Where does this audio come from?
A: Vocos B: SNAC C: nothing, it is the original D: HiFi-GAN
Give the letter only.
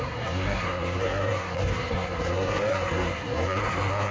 B